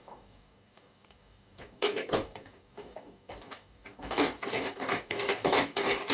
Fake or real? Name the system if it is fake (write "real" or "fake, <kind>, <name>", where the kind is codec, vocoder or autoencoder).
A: fake, codec, DAC